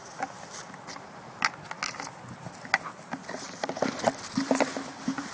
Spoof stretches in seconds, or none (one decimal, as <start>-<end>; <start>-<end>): none